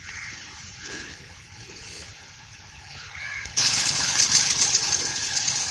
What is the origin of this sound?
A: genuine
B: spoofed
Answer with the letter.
B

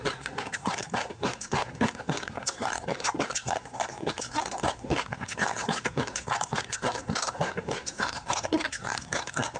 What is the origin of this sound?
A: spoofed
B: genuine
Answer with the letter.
A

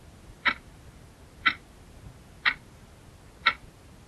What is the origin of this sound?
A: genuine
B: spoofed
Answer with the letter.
A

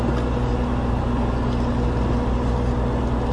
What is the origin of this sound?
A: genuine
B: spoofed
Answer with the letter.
A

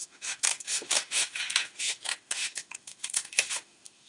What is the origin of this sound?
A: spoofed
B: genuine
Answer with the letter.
A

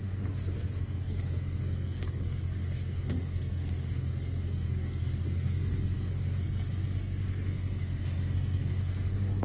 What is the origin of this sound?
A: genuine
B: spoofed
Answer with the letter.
B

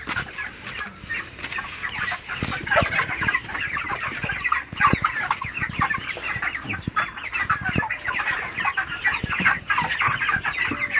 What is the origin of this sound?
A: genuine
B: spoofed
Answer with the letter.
A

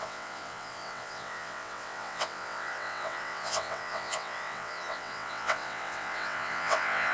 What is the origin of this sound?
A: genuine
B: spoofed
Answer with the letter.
B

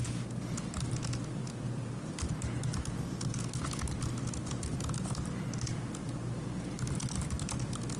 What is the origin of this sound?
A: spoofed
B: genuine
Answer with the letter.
B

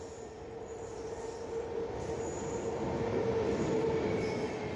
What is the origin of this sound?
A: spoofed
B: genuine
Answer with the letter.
B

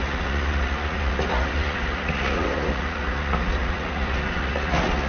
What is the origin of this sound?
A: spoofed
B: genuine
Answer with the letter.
A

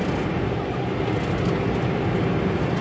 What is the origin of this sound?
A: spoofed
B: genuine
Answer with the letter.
B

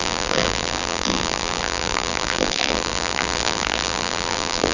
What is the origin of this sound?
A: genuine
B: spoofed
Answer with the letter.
B